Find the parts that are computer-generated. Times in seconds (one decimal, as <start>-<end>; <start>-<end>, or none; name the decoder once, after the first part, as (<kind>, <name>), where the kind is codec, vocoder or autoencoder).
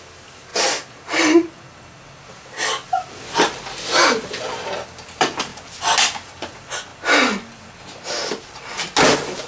none